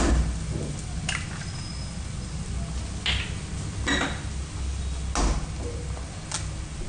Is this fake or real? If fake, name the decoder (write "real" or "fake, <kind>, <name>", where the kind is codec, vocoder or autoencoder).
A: real